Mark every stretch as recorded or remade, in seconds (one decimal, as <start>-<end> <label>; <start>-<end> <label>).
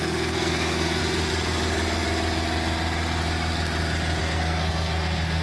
0.0-1.0 remade; 1.0-4.2 recorded; 4.2-5.4 remade